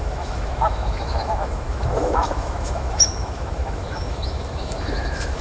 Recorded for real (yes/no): no